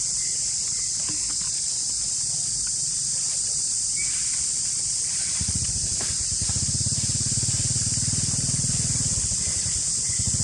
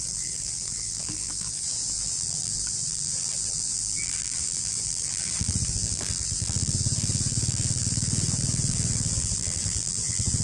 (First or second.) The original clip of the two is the first